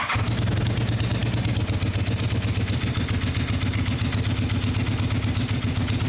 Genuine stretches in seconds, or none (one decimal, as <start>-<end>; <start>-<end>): 0.0-6.1